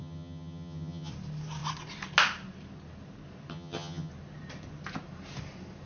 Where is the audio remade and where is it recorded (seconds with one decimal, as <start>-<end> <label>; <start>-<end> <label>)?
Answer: 0.0-1.1 remade; 1.1-3.5 recorded; 3.5-4.1 remade; 4.1-5.9 recorded